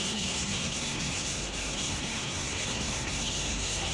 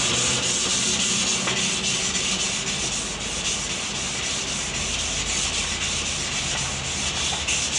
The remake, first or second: first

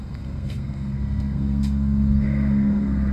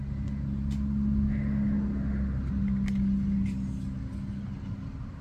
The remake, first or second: first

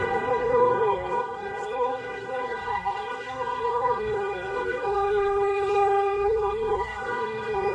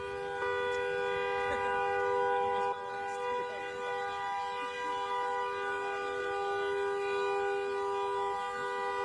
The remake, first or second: first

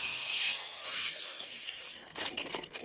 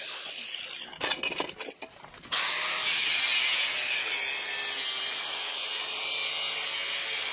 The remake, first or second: first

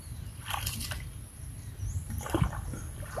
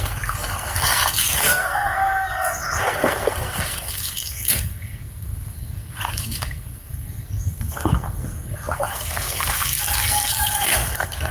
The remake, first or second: second